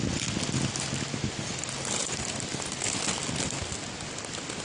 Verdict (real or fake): real